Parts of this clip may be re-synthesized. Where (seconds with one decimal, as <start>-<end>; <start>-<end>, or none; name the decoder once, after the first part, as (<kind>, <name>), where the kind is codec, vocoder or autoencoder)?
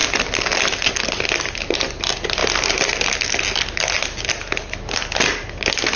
none